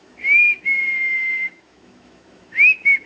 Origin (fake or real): fake